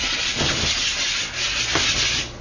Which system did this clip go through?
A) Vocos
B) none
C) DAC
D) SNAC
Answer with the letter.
B